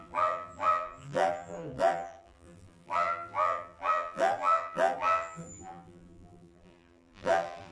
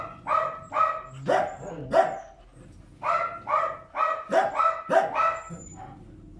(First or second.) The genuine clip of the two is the second